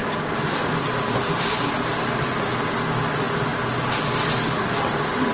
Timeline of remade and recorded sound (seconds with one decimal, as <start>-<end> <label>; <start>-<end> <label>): 0.0-1.6 remade; 1.6-5.3 recorded